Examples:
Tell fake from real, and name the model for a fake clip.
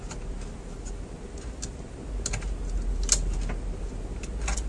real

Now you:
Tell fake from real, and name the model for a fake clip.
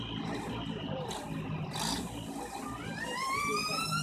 real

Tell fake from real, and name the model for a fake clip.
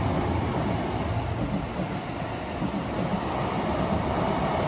real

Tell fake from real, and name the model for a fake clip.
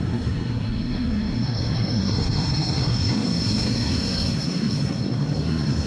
fake, codec, SNAC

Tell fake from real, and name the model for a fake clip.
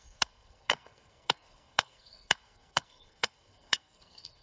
fake, codec, SNAC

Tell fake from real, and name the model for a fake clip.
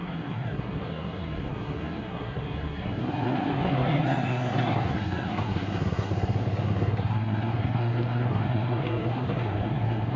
fake, codec, SNAC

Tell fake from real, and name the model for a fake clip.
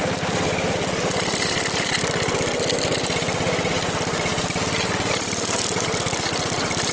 real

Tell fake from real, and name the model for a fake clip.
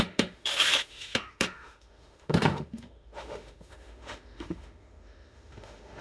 fake, autoencoder, DAC-VAE